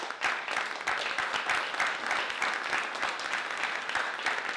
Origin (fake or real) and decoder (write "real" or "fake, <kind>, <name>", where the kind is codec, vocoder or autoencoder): real